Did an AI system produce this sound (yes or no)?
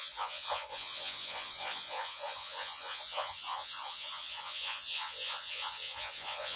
yes